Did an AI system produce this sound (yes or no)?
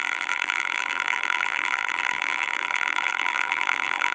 yes